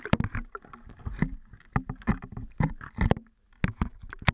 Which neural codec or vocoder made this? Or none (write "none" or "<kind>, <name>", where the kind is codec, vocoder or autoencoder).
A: none